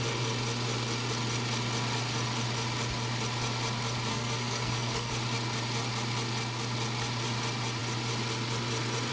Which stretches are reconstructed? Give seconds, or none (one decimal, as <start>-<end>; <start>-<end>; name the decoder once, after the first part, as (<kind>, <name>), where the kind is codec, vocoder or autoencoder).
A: 4.1-5.1 (codec, SNAC)